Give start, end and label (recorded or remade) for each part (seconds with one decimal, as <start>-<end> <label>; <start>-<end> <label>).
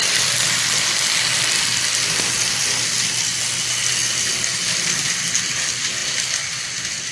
0.0-7.1 recorded